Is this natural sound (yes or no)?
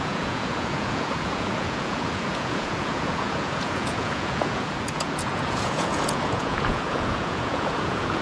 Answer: no